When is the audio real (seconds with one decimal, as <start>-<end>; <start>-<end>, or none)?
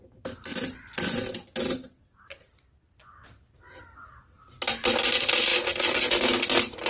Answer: 0.0-6.9